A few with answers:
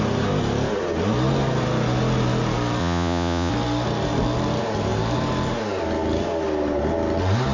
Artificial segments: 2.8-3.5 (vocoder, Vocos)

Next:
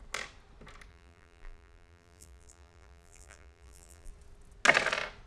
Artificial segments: 0.9-4.1 (vocoder, BigVGAN v2)

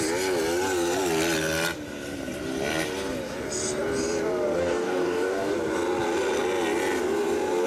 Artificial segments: 4.6-5.5 (codec, DAC)

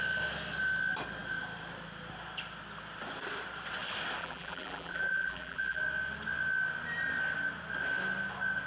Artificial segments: 4.2-5.8 (vocoder, BigVGAN v2)

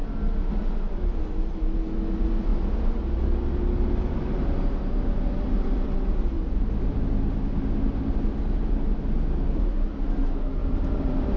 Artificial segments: 0.0-0.6 (vocoder, BigVGAN v2); 2.5-6.7; 10.6-11.4